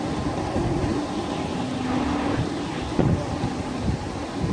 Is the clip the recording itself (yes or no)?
yes